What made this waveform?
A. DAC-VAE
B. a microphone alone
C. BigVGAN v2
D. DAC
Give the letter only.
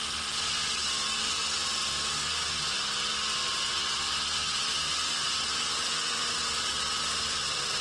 C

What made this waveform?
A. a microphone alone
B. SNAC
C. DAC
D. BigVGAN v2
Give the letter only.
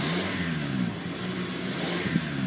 A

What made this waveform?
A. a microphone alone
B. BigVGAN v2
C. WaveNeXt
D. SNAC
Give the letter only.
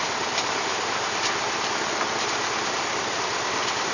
A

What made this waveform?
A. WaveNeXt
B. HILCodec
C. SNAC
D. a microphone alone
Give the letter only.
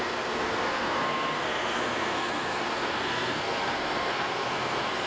C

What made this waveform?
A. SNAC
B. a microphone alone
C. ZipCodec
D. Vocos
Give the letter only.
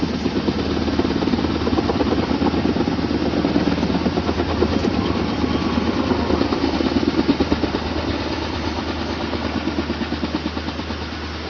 B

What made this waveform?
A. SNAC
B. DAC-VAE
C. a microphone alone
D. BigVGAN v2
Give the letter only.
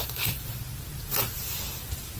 D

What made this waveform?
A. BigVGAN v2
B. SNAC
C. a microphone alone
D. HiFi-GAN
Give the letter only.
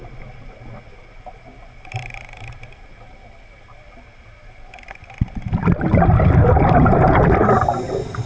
C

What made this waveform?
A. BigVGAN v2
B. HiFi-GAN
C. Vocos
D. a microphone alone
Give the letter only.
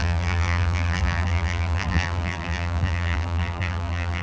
A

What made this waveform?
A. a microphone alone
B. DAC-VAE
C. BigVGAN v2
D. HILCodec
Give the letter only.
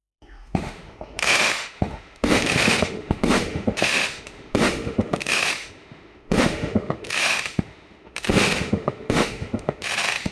B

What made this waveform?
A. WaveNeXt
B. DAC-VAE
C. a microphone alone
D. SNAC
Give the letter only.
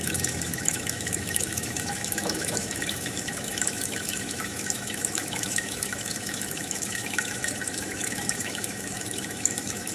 B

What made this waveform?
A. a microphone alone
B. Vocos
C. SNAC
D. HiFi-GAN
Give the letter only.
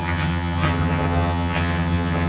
D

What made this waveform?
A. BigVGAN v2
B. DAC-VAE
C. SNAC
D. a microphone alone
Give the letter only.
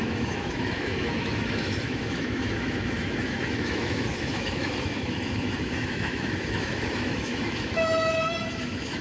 B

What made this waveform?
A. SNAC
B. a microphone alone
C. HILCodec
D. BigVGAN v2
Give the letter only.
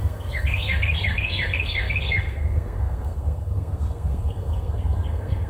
A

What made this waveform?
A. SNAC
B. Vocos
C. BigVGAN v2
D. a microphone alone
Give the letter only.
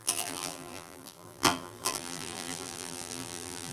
C